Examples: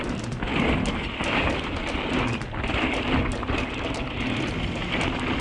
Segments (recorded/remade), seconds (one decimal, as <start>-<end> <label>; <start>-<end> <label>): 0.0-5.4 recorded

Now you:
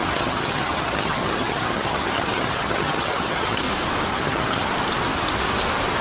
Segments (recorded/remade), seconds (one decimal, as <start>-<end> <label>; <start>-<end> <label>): 0.0-3.6 remade; 3.6-4.1 recorded; 4.1-4.7 remade; 4.7-6.0 recorded

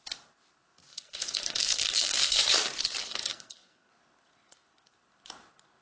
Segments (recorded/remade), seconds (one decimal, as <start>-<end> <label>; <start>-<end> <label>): 0.0-0.9 recorded; 0.9-2.4 remade; 2.4-3.0 recorded; 3.0-3.9 remade; 3.9-5.8 recorded

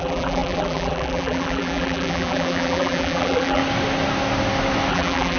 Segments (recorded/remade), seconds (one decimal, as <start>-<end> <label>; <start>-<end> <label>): 0.0-3.6 remade; 3.6-4.9 recorded; 4.9-5.4 remade

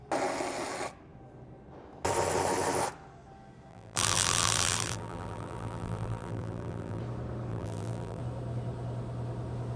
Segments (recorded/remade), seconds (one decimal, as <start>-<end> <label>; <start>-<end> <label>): 0.0-3.7 recorded; 3.7-7.0 remade; 7.0-7.5 recorded; 7.5-8.2 remade; 8.2-9.8 recorded

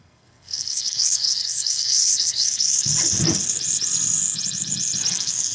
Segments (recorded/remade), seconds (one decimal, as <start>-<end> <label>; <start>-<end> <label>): 0.0-2.9 remade; 2.9-5.1 recorded; 5.1-5.5 remade